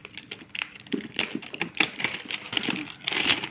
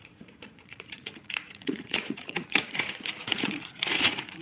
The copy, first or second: second